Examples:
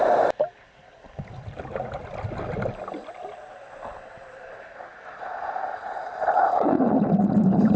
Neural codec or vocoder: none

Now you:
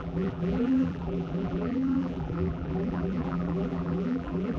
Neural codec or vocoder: vocoder, BigVGAN v2